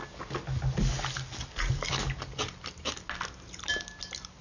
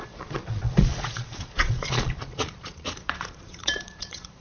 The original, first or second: first